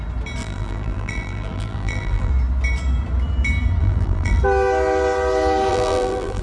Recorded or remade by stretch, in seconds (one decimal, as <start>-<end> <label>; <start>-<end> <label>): 0.0-0.4 recorded; 0.4-2.3 remade; 2.3-3.8 recorded; 3.8-4.4 remade; 4.4-5.7 recorded; 5.7-6.4 remade